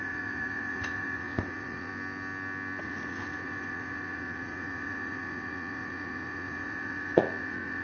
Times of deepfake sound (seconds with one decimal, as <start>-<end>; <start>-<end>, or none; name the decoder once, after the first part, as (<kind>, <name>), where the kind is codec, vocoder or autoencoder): 0.0-1.9 (vocoder, Vocos); 2.8-7.8